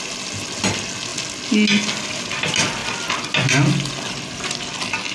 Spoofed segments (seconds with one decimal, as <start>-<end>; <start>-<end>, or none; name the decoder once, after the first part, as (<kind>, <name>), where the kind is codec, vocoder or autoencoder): none